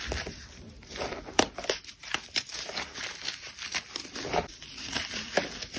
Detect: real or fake fake